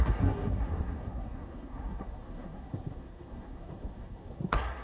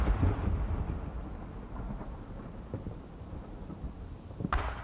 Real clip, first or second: second